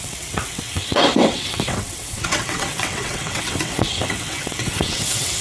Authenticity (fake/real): fake